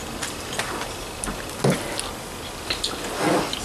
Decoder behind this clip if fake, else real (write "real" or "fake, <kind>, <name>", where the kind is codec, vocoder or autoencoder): real